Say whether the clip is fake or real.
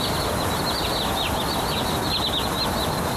real